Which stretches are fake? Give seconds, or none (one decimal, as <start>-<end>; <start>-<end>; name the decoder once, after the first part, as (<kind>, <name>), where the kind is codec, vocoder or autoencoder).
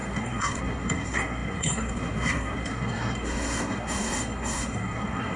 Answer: 0.0-5.4 (codec, SNAC)